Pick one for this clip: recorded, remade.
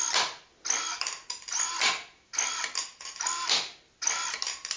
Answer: recorded